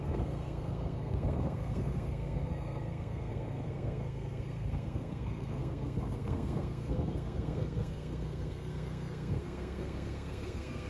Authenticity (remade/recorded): remade